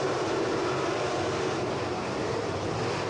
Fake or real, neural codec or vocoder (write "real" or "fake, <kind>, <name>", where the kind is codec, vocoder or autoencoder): fake, vocoder, BigVGAN v2